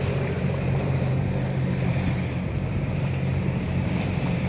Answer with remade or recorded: remade